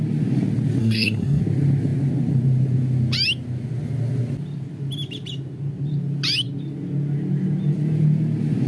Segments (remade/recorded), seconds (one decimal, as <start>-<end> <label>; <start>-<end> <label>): 0.0-0.8 recorded; 0.8-1.4 remade; 1.4-8.7 recorded